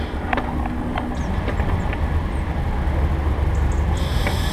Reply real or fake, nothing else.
real